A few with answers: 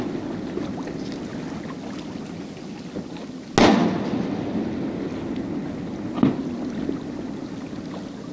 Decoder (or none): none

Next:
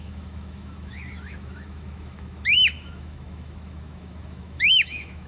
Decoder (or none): autoencoder, DAC-VAE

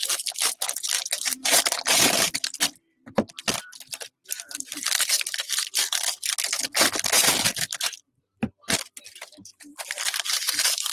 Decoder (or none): vocoder, BigVGAN v2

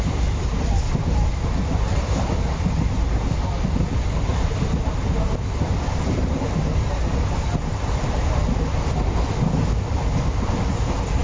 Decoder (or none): none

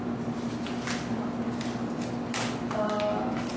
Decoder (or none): none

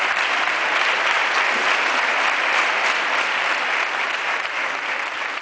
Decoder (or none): none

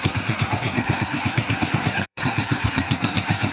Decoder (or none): codec, SNAC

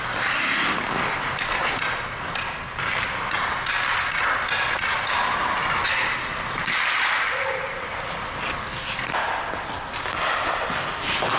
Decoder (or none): none